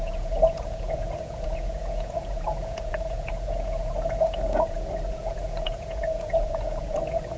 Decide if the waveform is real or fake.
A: fake